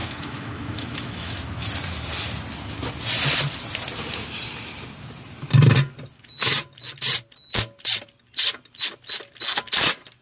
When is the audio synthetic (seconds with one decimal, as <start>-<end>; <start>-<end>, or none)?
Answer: 0.0-1.4